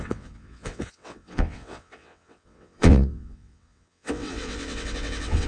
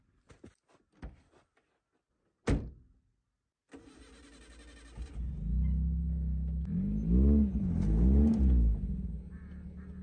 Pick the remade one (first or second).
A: first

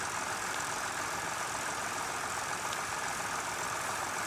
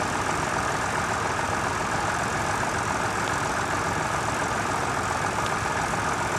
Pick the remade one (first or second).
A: first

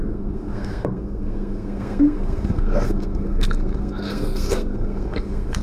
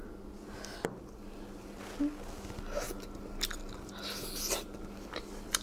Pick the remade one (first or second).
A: first